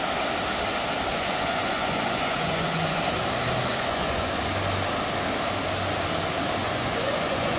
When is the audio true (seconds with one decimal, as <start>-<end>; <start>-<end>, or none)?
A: 0.0-1.1; 3.0-3.7; 4.3-6.6